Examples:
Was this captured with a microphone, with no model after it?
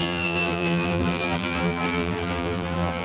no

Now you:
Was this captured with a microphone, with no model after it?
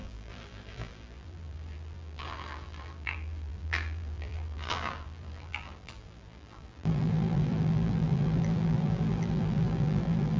no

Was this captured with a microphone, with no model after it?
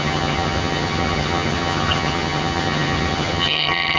no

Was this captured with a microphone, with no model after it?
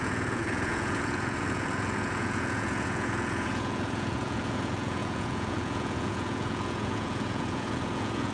no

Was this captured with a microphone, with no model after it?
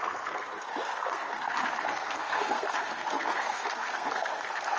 no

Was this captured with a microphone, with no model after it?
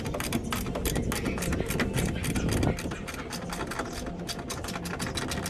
yes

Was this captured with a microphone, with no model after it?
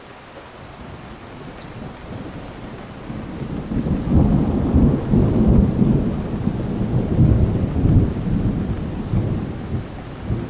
yes